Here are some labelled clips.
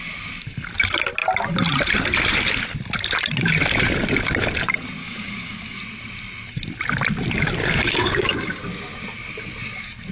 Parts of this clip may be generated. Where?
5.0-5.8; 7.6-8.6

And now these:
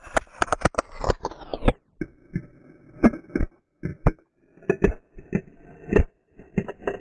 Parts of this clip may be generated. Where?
none

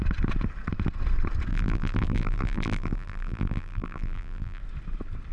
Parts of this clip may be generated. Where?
1.5-4.6